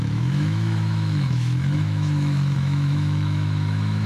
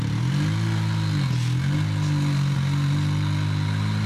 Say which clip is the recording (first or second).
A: second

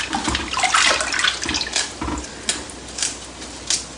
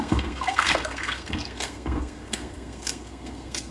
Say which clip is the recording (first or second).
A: first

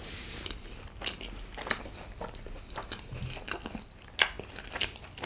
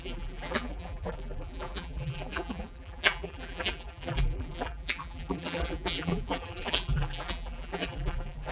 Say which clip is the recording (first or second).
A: first